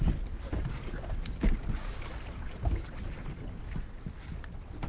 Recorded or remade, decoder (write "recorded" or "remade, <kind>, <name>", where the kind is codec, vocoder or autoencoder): recorded